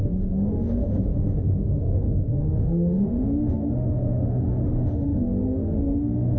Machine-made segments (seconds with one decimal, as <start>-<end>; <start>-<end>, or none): 0.0-6.4